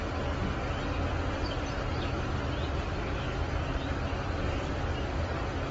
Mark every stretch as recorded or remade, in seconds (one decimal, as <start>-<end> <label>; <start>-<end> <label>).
0.0-1.4 recorded; 1.4-1.9 remade; 1.9-5.7 recorded